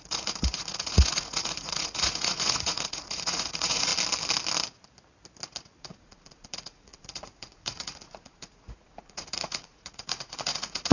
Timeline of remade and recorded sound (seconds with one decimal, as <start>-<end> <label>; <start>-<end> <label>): 0.0-3.9 remade; 3.9-5.8 recorded; 5.8-10.9 remade